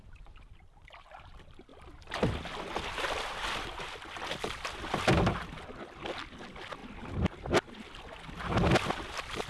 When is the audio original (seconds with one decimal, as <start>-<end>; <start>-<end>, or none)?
0.0-9.5